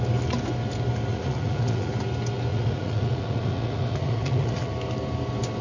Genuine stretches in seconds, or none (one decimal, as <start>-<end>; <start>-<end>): 0.0-1.1; 1.9-2.5; 4.7-5.6